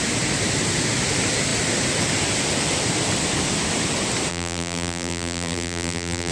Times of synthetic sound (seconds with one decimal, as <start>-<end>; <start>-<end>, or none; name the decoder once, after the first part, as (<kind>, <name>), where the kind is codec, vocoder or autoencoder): 4.3-6.3 (vocoder, BigVGAN v2)